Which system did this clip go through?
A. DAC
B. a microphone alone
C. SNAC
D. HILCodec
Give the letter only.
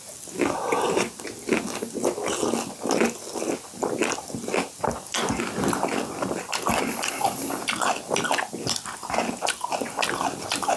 B